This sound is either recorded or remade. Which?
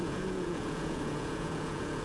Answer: remade